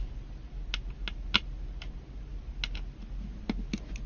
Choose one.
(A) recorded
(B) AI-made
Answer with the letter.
A